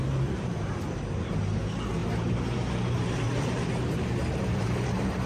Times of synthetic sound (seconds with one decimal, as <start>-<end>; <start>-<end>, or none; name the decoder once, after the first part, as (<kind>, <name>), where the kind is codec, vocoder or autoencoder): 0.0-1.6 (vocoder, BigVGAN v2); 2.0-5.3